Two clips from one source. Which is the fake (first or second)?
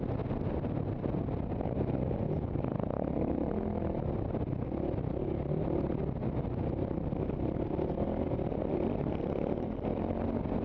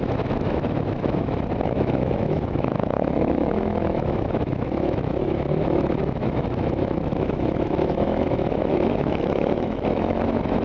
second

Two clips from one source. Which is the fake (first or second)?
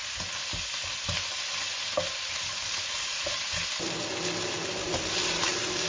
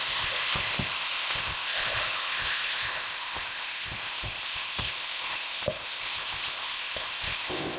second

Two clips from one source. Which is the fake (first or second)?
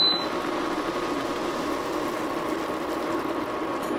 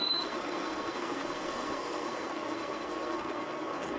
second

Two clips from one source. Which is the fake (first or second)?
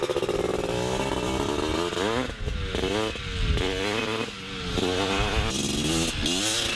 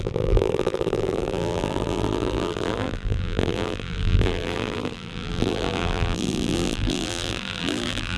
second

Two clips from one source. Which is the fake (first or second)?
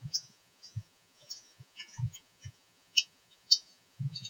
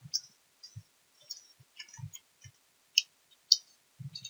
first